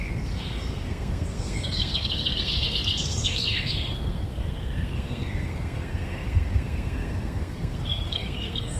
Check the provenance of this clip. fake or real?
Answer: fake